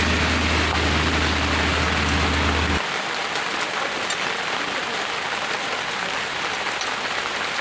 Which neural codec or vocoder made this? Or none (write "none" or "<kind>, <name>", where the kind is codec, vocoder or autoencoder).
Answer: none